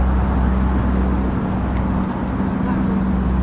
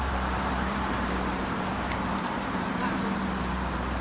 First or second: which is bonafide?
first